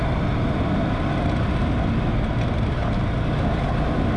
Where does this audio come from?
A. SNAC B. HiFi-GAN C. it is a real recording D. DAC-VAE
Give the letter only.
C